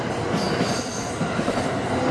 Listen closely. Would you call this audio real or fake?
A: real